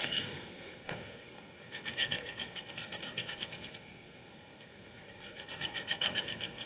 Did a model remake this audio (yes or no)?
yes